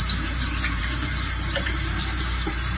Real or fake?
fake